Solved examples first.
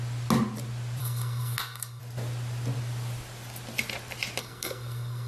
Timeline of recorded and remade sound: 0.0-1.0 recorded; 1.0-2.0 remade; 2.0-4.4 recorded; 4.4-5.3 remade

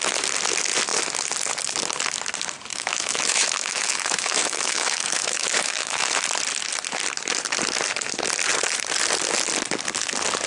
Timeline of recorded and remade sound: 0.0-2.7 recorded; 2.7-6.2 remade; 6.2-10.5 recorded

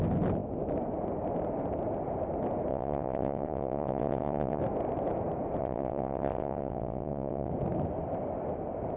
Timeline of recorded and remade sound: 0.0-2.7 recorded; 2.7-4.6 remade; 4.6-5.6 recorded; 5.6-7.5 remade; 7.5-9.0 recorded

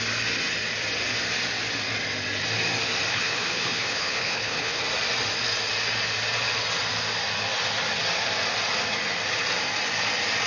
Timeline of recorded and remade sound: 0.0-3.1 recorded; 3.1-4.8 remade; 4.8-10.5 recorded

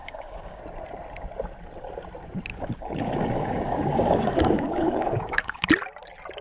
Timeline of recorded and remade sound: 0.0-0.6 remade; 0.6-2.5 recorded; 2.5-5.7 remade; 5.7-6.4 recorded

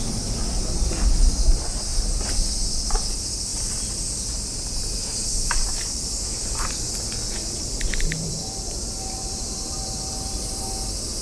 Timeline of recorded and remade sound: 0.0-1.9 recorded; 1.9-3.0 remade; 3.0-7.4 recorded; 7.4-10.6 remade; 10.6-11.2 recorded